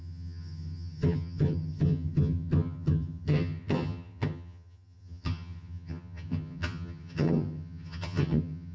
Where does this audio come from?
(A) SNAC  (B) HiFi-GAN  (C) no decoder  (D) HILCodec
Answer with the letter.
B